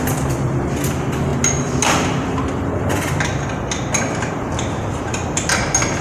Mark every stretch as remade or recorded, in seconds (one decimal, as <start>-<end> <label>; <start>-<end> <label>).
0.0-6.0 recorded